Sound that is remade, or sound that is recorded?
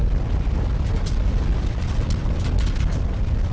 recorded